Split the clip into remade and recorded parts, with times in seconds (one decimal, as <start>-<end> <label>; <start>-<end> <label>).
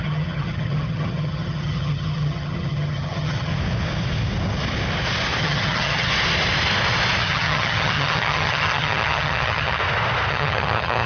0.0-3.5 remade; 3.5-5.4 recorded; 5.4-6.1 remade; 6.1-7.2 recorded; 7.2-9.8 remade; 9.8-10.3 recorded; 10.3-11.1 remade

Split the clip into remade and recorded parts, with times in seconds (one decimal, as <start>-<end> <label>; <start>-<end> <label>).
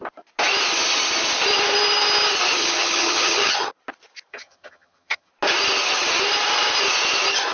0.0-2.6 recorded; 2.6-3.7 remade; 3.7-4.3 recorded; 4.3-5.3 remade; 5.3-7.5 recorded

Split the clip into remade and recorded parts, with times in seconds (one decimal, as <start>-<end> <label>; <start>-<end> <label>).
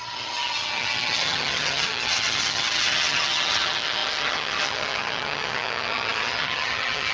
0.0-7.1 remade